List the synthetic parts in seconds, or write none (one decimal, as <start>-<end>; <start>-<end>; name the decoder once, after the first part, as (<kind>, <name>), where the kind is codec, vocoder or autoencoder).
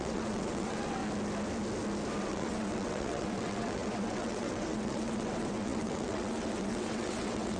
0.0-1.0 (vocoder, WaveNeXt); 2.2-7.6